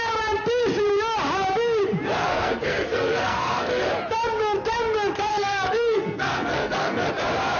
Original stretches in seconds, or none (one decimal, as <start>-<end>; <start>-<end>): 0.0-2.2; 3.9-5.3; 7.1-7.6